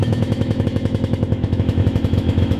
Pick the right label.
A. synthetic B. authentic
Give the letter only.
A